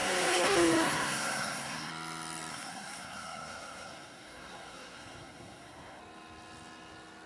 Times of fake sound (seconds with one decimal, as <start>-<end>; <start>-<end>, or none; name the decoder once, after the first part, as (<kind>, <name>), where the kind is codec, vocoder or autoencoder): 0.0-1.9 (codec, SNAC); 2.5-6.0